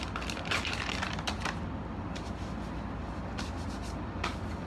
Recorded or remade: recorded